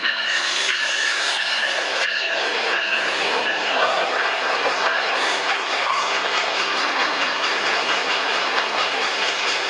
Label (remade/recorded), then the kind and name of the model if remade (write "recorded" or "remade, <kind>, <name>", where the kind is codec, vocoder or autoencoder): remade, codec, SNAC